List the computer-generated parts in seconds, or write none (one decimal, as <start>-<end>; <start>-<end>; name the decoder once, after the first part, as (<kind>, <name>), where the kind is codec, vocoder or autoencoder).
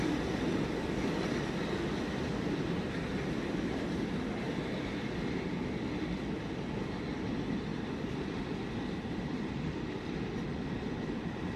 7.7-8.4 (vocoder, BigVGAN v2)